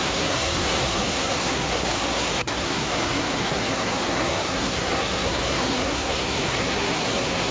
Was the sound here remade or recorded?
remade